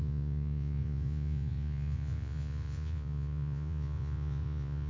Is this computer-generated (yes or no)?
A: yes